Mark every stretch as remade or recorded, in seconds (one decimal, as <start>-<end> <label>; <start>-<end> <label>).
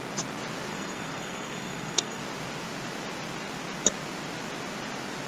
0.0-0.7 recorded; 0.7-2.2 remade; 2.2-5.3 recorded